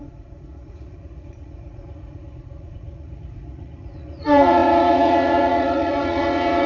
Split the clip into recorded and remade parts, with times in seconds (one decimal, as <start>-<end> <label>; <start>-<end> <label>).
0.0-6.7 remade

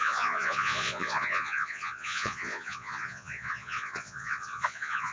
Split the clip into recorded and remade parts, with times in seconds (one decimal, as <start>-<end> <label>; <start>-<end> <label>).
0.0-5.1 remade

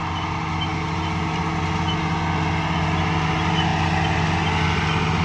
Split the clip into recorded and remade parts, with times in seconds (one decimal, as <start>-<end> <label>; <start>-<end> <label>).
0.0-5.2 recorded

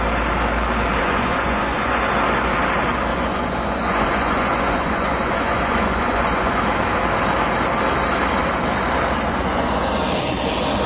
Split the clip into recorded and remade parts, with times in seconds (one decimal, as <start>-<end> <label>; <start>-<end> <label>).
0.0-1.0 recorded; 1.0-2.0 remade; 2.0-3.1 recorded; 3.1-6.6 remade; 6.6-9.3 recorded; 9.3-9.9 remade; 9.9-10.9 recorded